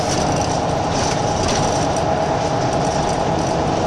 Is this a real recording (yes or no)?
yes